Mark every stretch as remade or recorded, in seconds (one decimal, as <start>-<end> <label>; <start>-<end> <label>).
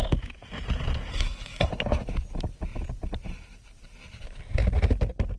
0.0-1.1 recorded; 1.1-1.7 remade; 1.7-5.4 recorded